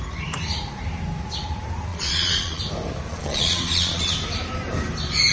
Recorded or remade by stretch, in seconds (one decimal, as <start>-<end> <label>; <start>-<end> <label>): 0.0-1.9 recorded; 1.9-2.6 remade; 2.6-3.1 recorded; 3.1-4.1 remade; 4.1-5.3 recorded

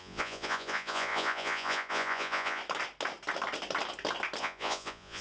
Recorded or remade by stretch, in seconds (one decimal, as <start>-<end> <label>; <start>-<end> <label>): 0.0-2.6 remade; 2.6-4.4 recorded; 4.4-5.2 remade

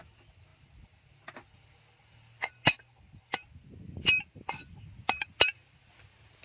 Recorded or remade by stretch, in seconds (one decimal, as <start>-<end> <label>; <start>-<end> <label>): 0.0-6.4 recorded

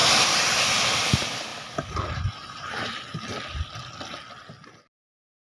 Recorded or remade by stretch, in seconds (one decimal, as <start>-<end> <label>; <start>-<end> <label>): 0.0-1.1 remade; 1.1-5.4 recorded